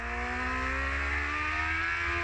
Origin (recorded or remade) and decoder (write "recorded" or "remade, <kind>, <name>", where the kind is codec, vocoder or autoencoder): recorded